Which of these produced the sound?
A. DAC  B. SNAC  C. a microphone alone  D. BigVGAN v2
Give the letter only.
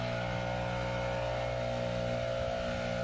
C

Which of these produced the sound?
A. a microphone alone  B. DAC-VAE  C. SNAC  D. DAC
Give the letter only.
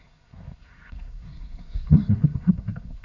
C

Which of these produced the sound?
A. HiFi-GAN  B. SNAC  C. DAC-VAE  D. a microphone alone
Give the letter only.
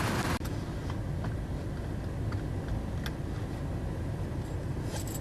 D